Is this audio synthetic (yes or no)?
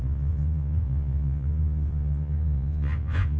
yes